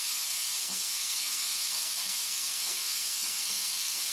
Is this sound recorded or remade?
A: remade